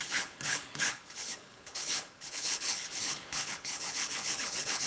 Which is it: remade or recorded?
remade